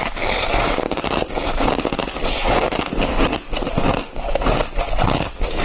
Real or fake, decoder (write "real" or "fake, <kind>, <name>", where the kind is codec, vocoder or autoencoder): real